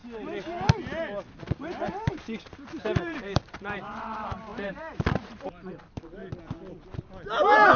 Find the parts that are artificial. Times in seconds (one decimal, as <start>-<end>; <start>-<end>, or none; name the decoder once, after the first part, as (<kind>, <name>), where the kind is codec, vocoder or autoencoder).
1.4-6.2 (vocoder, BigVGAN v2)